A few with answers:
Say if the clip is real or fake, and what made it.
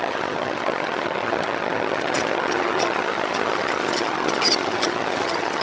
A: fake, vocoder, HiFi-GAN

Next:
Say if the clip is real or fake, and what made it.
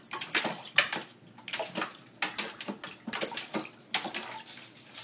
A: real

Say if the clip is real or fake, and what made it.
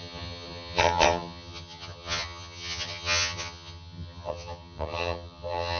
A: fake, vocoder, HiFi-GAN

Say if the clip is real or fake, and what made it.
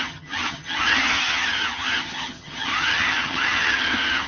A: fake, vocoder, HiFi-GAN